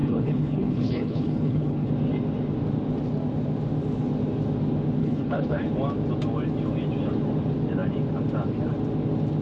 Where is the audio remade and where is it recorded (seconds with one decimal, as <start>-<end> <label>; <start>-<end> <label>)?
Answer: 0.0-1.9 remade; 1.9-5.0 recorded; 5.0-5.7 remade; 5.7-9.4 recorded